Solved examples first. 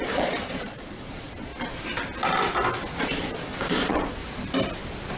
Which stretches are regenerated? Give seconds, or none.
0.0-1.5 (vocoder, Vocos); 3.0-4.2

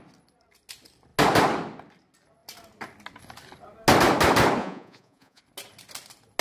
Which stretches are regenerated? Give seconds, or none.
4.6-5.4 (vocoder, Vocos)

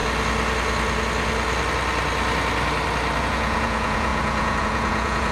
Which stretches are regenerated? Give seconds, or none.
3.2-5.3 (vocoder, Vocos)

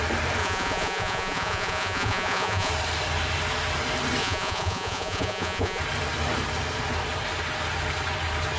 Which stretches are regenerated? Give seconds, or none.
0.4-2.7 (vocoder, Vocos); 4.2-5.8

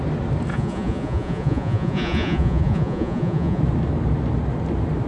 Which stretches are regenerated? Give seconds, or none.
0.5-3.6 (vocoder, Vocos)